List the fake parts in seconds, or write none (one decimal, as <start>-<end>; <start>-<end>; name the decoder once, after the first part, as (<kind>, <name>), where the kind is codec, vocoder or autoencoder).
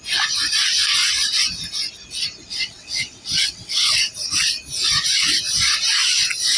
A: 2.5-4.1 (vocoder, WaveNeXt)